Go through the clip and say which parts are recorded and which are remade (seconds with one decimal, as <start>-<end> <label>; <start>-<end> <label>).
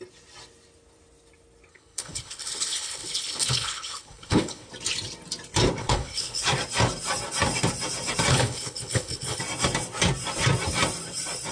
0.0-1.7 recorded; 1.7-4.7 remade; 4.7-5.8 recorded; 5.8-6.4 remade; 6.4-8.3 recorded; 8.3-9.4 remade; 9.4-11.5 recorded